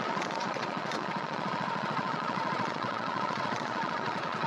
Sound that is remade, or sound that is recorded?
remade